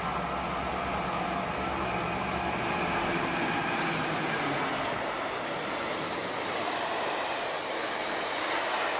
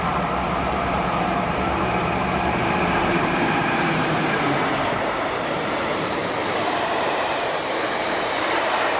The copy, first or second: second